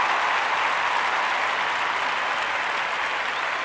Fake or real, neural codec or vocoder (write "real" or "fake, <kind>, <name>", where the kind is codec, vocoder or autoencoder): real